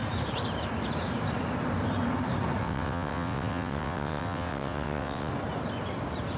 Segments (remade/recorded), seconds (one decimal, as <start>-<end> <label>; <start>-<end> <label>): 0.0-2.6 recorded; 2.6-5.3 remade; 5.3-6.4 recorded